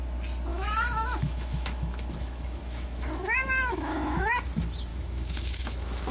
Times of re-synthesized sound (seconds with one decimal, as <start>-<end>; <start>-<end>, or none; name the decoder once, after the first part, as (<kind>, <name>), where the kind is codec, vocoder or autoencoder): 0.5-4.2 (autoencoder, DAC-VAE); 4.9-6.1